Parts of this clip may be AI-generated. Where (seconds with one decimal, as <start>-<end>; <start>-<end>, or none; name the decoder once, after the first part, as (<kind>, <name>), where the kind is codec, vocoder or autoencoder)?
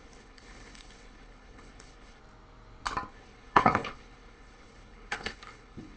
0.0-2.2 (codec, HILCodec); 3.1-6.0